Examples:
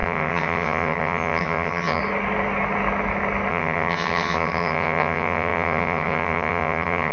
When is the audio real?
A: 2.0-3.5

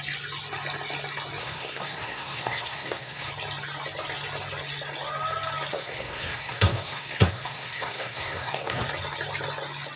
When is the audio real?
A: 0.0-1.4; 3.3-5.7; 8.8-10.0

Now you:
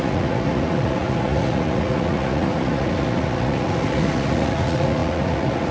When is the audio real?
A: none